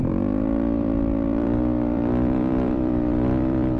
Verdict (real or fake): fake